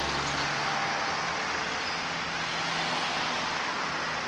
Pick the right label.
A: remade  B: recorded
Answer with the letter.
B